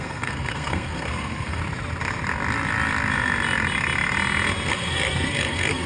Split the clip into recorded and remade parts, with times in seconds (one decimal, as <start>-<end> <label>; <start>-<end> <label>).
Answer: 0.0-1.6 remade; 1.6-4.7 recorded; 4.7-5.9 remade